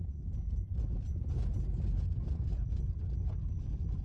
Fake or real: real